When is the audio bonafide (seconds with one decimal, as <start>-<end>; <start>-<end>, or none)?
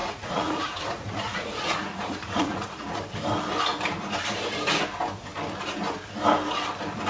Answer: 3.0-7.1